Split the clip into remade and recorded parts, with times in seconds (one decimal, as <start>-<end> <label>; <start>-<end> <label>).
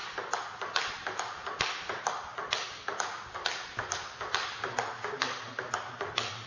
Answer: 0.0-6.5 recorded